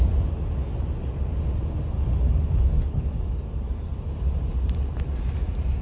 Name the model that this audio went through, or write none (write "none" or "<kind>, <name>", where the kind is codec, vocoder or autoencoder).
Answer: none